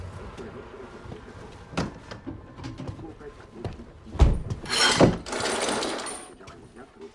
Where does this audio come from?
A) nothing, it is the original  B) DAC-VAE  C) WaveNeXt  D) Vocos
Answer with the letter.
A